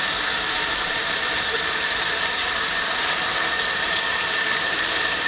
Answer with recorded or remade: remade